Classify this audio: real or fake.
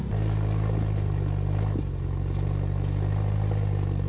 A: real